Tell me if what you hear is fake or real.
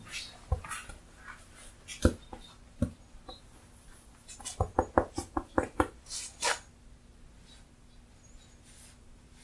real